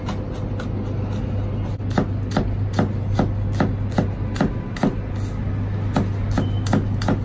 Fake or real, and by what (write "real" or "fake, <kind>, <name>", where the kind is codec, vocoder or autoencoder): real